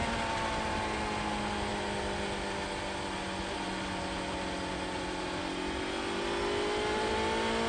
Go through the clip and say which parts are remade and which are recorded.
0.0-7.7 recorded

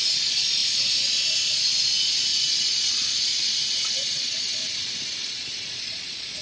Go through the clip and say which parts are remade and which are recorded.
0.0-4.6 remade; 4.6-5.3 recorded; 5.3-6.4 remade